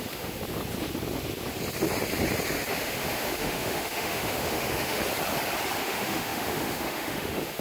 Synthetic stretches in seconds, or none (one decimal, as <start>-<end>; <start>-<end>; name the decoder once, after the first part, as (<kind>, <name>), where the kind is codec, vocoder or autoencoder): 0.0-0.4 (autoencoder, DAC-VAE); 2.7-5.0; 5.8-7.6